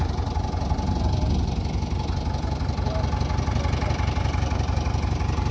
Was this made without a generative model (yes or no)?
yes